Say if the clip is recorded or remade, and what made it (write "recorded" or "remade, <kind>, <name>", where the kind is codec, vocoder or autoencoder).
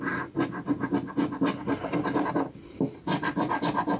recorded